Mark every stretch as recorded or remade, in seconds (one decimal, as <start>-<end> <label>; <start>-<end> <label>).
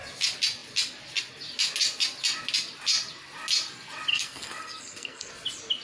0.0-4.1 recorded; 4.1-5.3 remade; 5.3-5.8 recorded